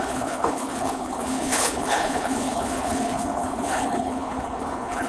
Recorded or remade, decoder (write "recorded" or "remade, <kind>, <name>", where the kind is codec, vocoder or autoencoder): remade, codec, HILCodec